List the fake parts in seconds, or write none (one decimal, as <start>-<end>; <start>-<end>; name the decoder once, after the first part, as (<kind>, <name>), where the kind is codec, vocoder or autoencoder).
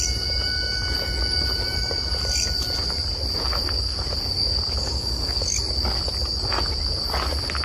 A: 4.8-5.4 (codec, DAC)